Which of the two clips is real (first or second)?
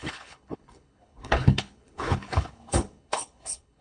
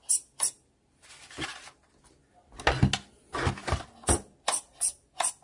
second